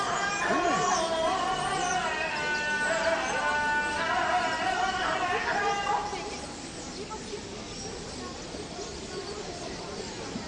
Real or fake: real